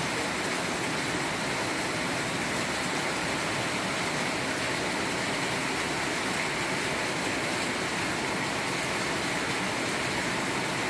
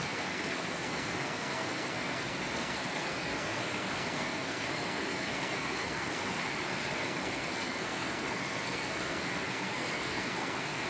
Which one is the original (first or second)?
first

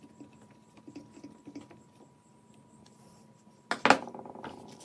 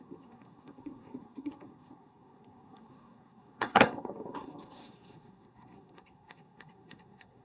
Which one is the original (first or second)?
first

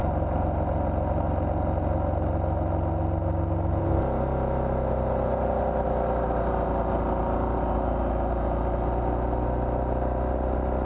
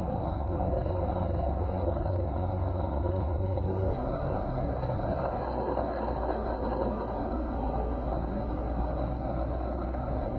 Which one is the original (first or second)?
first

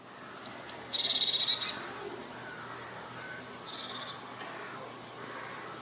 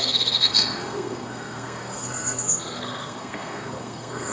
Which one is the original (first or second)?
first